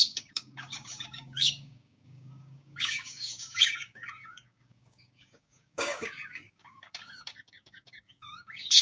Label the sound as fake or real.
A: fake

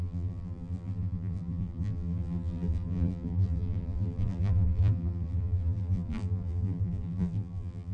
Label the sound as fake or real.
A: fake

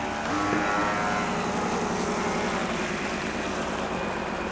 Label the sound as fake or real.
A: real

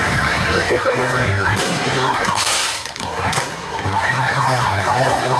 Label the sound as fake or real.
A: fake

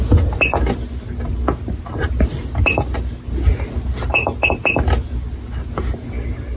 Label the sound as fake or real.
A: real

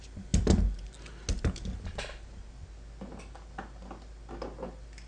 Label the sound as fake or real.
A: real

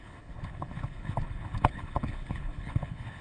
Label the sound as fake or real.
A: fake